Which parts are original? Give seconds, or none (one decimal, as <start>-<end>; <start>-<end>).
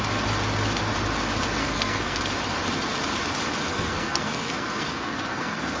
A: 0.0-1.6; 2.2-3.7